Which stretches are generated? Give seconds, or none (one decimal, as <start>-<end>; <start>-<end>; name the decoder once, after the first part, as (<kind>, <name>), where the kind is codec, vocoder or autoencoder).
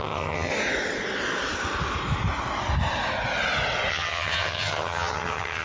0.0-0.5 (vocoder, HiFi-GAN); 3.9-5.6